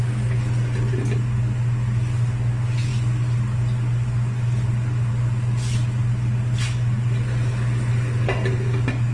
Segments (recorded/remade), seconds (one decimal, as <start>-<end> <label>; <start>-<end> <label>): 0.0-9.1 recorded